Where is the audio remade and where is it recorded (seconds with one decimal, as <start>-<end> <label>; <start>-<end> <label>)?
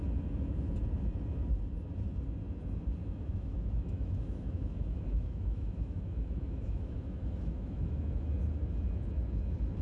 0.0-3.0 recorded; 3.0-8.0 remade; 8.0-9.8 recorded